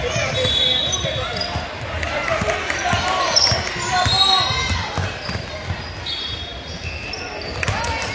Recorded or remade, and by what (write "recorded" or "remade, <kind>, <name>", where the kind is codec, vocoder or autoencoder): recorded